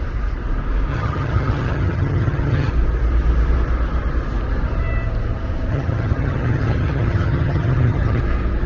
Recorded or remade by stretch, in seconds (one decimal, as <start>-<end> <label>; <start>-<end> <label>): 0.0-0.9 recorded; 0.9-2.7 remade; 2.7-5.7 recorded; 5.7-8.2 remade; 8.2-8.7 recorded